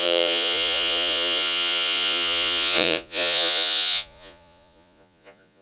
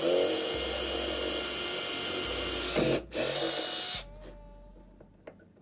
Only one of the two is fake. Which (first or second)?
first